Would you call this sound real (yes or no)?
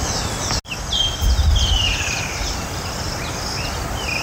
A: yes